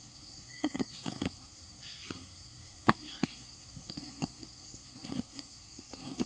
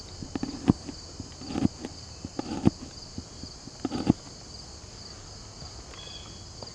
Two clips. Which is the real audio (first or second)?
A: second